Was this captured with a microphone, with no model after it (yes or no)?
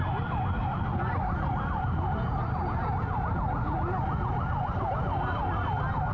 yes